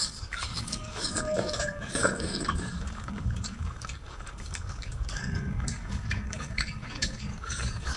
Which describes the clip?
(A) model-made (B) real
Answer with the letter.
A